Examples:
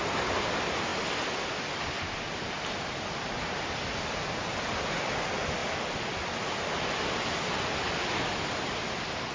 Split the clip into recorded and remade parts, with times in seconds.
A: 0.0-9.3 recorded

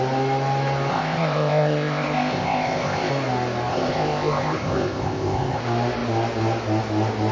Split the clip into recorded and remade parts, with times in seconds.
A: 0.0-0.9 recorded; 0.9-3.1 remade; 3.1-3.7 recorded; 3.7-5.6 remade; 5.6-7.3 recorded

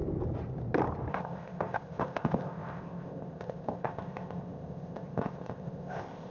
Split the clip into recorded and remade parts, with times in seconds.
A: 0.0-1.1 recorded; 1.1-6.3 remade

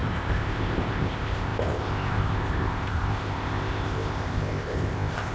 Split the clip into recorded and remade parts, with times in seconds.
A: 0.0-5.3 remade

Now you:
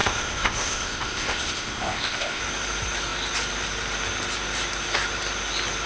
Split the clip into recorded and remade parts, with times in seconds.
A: 0.0-2.4 remade; 2.4-5.9 recorded